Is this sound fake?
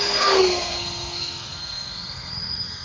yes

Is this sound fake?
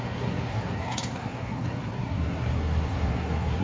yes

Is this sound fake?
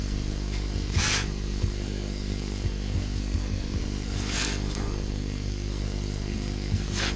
yes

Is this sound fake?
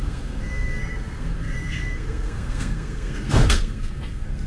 yes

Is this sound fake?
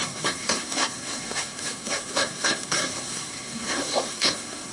yes